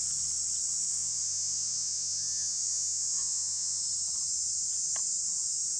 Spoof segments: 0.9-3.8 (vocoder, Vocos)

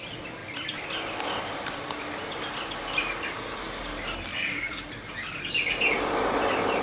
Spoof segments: 4.3-4.8 (vocoder, Vocos)